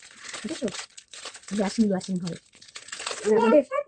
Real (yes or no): no